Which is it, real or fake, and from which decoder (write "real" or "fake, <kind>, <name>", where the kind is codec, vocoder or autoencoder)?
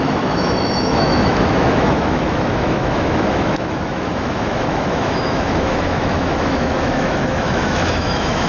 fake, autoencoder, DAC-VAE